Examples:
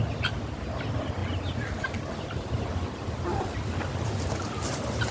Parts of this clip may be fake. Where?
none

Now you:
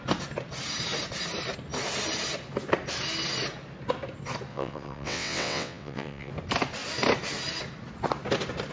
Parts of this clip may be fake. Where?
4.5-6.3 (vocoder, WaveNeXt)

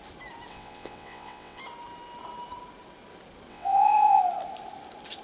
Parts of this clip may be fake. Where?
0.5-1.6 (vocoder, WaveNeXt); 3.5-4.2

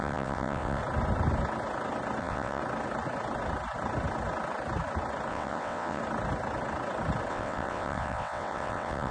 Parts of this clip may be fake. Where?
0.0-0.8 (vocoder, WaveNeXt); 2.2-2.6; 5.3-6.0; 7.3-9.1

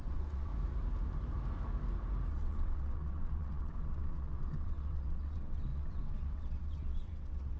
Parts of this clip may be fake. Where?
0.0-0.5 (vocoder, WaveNeXt); 2.3-7.6

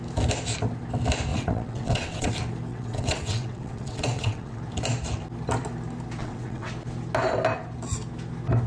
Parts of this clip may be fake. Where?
1.3-2.3 (vocoder, WaveNeXt); 2.7-4.6; 6.2-6.7

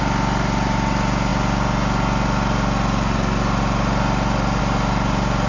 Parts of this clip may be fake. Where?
none

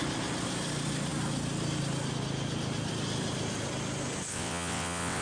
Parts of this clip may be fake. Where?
4.3-5.2 (vocoder, WaveNeXt)